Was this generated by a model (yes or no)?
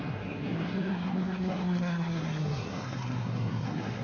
yes